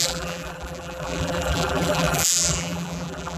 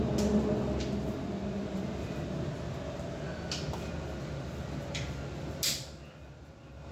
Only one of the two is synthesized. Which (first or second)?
first